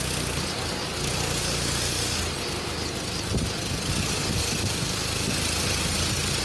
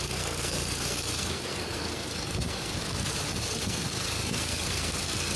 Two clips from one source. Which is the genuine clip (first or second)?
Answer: first